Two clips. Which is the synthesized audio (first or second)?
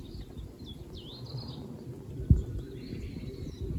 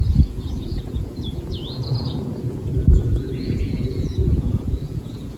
second